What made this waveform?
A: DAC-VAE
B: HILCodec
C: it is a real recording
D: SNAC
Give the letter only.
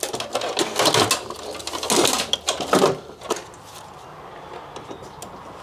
C